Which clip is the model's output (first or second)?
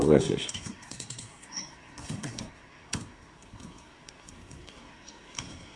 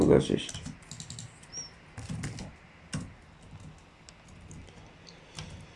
first